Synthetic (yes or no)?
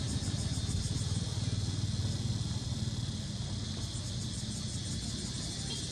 no